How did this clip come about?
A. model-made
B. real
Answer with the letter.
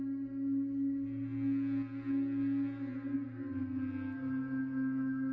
B